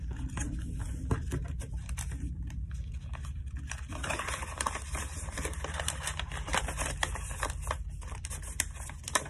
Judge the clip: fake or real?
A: fake